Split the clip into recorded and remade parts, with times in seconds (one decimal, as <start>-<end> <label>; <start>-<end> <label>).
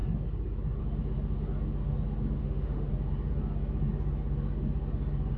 0.0-2.4 recorded; 2.4-2.9 remade; 2.9-5.4 recorded